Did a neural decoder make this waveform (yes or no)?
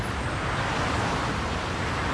no